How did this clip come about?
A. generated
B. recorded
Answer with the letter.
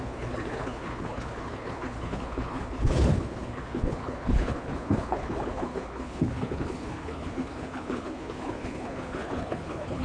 A